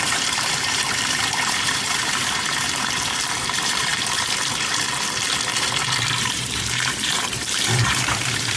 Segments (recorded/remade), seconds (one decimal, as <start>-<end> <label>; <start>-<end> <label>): 0.0-3.9 remade; 3.9-6.1 recorded; 6.1-8.6 remade